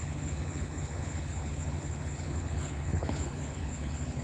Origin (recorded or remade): remade